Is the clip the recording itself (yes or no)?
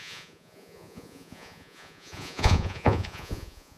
no